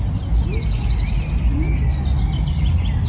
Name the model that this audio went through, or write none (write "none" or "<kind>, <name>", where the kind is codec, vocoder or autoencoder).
none